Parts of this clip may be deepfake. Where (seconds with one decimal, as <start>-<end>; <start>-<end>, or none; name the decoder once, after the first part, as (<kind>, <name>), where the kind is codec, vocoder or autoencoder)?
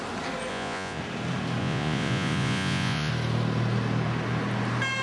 0.5-1.0 (vocoder, Vocos); 1.6-3.1